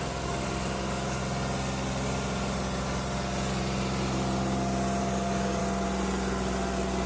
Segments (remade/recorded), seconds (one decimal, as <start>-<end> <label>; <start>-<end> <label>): 0.0-1.2 remade; 1.2-5.0 recorded; 5.0-5.6 remade; 5.6-7.1 recorded